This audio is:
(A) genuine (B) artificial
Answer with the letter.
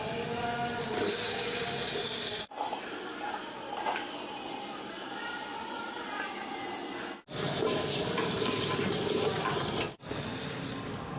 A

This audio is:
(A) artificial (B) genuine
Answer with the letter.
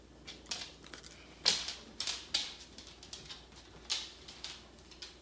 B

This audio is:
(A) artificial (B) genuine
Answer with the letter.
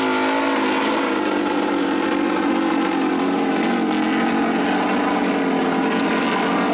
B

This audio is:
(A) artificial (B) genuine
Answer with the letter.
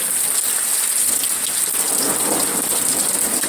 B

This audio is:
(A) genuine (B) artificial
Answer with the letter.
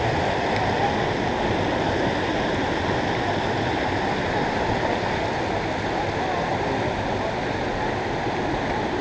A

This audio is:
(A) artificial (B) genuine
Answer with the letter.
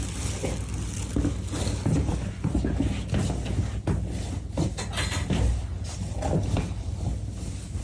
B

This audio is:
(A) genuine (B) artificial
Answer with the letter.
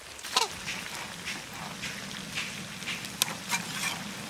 A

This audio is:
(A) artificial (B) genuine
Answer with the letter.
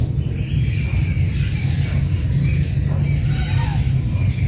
B